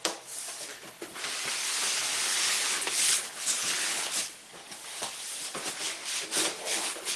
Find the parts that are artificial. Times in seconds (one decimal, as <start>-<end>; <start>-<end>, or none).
0.7-1.2; 2.3-4.3; 6.6-7.2